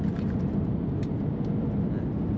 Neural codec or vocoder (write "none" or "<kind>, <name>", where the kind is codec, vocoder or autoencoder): none